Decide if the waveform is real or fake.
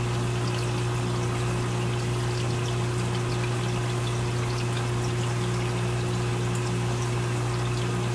real